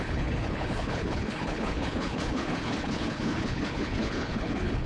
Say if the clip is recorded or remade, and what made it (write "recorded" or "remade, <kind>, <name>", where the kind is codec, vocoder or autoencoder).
remade, codec, HILCodec